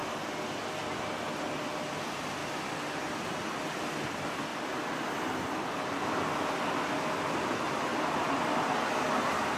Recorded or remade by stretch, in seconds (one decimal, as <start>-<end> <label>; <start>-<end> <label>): 0.0-2.4 recorded; 2.4-3.0 remade; 3.0-9.6 recorded